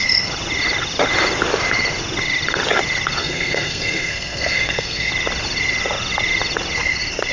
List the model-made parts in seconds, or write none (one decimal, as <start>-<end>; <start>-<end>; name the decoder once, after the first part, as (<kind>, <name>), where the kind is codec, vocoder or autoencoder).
3.2-5.1 (codec, SNAC)